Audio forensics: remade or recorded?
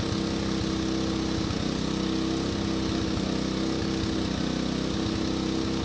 recorded